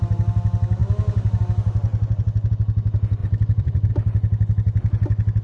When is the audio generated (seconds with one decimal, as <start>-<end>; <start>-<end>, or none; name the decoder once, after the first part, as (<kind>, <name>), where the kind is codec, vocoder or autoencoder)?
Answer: 1.9-2.5 (vocoder, BigVGAN v2); 3.2-3.9